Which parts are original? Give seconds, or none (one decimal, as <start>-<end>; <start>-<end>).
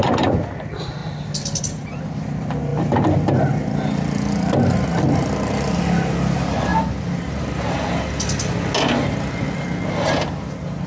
0.0-10.9